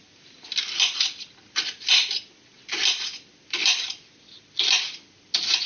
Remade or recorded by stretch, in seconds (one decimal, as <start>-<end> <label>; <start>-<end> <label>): 0.0-5.7 recorded